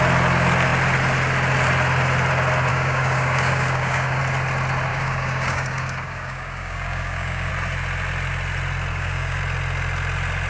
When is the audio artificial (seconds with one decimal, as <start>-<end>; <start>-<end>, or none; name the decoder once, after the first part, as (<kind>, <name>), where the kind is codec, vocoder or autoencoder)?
2.7-4.2 (codec, DAC); 4.9-7.5; 8.9-9.4